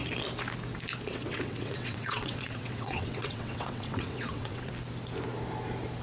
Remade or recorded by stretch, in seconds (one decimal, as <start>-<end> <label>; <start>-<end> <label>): 0.0-1.1 recorded; 1.1-4.7 remade; 4.7-6.0 recorded